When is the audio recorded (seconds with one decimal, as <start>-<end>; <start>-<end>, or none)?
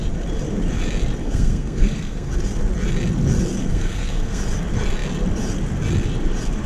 0.0-1.2; 2.3-3.6; 4.4-6.7